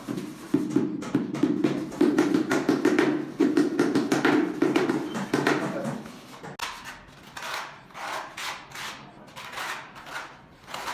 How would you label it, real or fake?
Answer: real